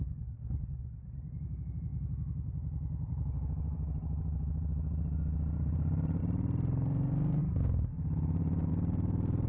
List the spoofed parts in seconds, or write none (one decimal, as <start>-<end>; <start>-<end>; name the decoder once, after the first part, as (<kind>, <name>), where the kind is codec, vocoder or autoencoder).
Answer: 0.0-9.5 (vocoder, BigVGAN v2)

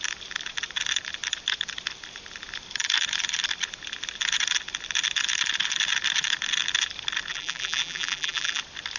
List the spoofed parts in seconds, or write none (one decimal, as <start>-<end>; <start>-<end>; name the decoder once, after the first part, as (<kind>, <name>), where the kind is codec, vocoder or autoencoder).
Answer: 7.3-8.6 (vocoder, BigVGAN v2)

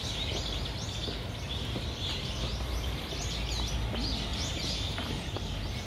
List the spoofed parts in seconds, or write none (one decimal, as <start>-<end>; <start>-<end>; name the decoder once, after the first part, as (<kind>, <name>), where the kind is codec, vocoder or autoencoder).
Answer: 2.5-3.2 (vocoder, BigVGAN v2); 4.3-5.3

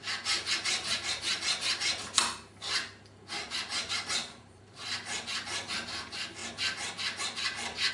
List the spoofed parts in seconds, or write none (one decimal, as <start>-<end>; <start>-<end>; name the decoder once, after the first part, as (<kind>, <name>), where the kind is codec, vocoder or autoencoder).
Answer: 4.2-4.8 (vocoder, BigVGAN v2)

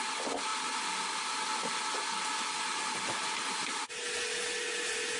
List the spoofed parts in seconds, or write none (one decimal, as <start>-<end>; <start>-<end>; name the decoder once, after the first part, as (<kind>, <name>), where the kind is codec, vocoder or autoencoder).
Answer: none

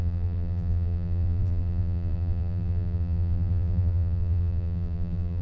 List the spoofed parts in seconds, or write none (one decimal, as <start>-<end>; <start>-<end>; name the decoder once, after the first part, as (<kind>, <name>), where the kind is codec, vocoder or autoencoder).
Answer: 0.0-5.4 (vocoder, BigVGAN v2)

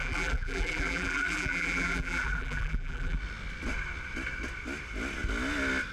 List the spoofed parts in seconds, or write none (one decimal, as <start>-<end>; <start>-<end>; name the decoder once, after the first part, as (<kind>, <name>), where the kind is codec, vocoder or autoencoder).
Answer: 0.0-3.2 (vocoder, BigVGAN v2)

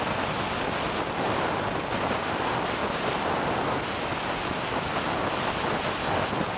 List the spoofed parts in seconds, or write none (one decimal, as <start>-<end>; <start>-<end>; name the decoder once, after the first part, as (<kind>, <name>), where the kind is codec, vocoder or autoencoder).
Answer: 2.8-3.4 (vocoder, BigVGAN v2)